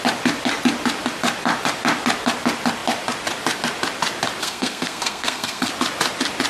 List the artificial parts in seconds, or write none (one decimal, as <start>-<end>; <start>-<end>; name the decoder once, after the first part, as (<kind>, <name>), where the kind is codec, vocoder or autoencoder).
4.4-5.7 (codec, SNAC)